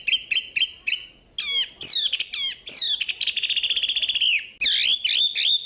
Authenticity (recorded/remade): recorded